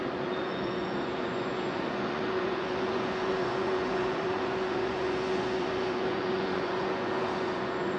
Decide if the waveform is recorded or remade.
remade